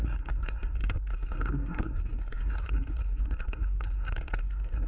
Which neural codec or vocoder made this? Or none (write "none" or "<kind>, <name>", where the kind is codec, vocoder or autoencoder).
codec, SNAC